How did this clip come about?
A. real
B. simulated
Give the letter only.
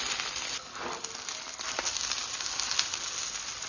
A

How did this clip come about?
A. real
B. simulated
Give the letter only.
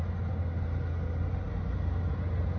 A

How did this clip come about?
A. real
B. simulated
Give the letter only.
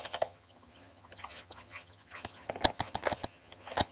B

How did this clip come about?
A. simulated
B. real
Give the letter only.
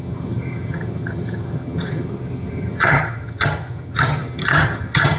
A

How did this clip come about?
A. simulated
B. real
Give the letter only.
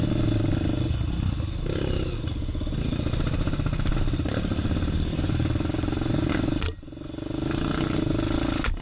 B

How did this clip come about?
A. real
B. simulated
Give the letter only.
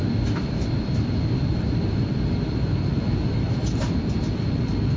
A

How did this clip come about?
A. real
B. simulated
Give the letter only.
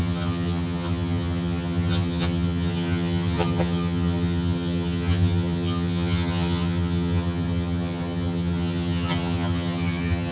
B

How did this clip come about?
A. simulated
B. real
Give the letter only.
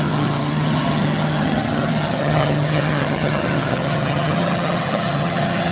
A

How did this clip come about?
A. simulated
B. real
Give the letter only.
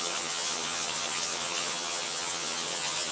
A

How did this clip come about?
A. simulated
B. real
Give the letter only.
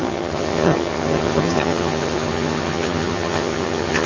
A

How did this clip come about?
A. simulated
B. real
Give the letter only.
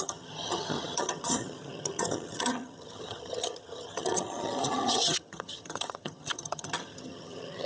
A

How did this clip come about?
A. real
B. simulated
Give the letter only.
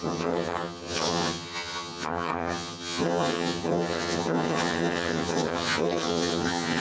B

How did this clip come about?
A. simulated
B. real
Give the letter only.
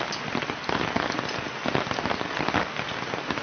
B